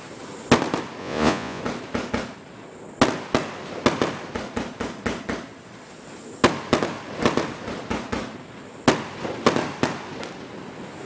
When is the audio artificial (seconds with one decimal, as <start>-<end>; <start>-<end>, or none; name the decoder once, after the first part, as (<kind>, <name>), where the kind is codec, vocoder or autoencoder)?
1.0-1.6 (vocoder, Vocos)